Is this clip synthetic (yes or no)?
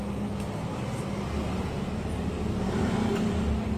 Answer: no